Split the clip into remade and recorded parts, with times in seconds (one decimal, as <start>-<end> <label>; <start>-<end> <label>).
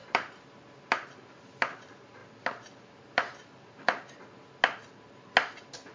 0.0-5.9 recorded